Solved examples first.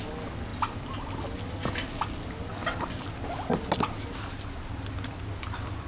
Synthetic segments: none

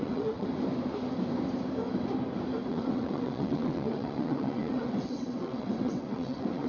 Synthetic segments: 0.0-0.5 (vocoder, WaveNeXt); 2.7-6.7

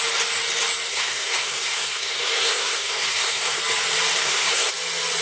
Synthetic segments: 0.9-3.6 (codec, SNAC); 4.2-4.7

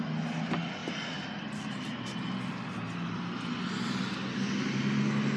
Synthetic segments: none

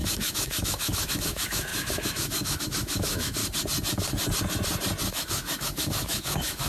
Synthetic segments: 0.0-3.4 (autoencoder, DAC-VAE); 5.1-6.7